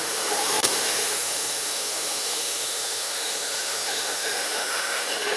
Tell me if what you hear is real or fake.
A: fake